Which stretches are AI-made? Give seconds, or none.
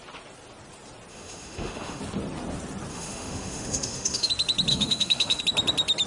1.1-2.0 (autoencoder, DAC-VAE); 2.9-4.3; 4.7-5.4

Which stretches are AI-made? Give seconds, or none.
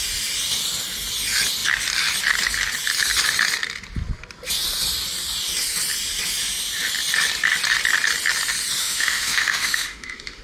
8.8-10.4 (autoencoder, DAC-VAE)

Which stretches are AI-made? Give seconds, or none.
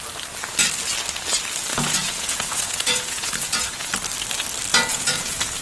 1.7-3.9 (vocoder, Vocos); 4.9-5.6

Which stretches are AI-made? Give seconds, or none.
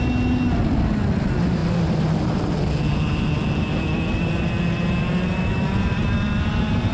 none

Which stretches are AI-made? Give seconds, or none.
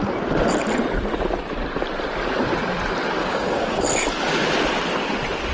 3.2-3.8 (codec, DAC)